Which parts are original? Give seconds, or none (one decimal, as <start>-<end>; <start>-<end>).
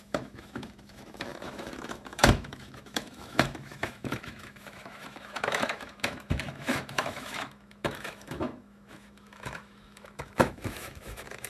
none